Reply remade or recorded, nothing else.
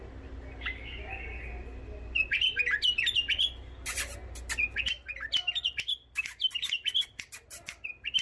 recorded